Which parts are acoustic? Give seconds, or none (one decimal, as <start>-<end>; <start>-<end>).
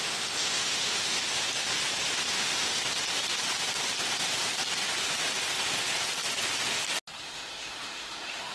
1.2-2.3; 2.8-7.2